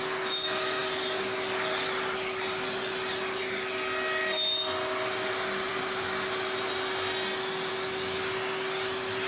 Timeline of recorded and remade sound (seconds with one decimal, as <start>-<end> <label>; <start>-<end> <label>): 0.0-9.3 recorded